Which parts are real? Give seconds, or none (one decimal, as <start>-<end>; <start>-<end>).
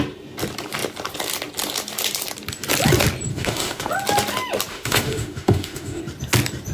0.0-3.3; 3.9-4.7; 6.0-6.7